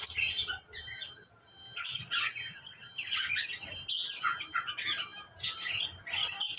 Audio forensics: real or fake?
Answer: real